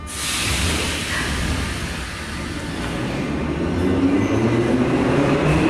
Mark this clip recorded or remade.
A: recorded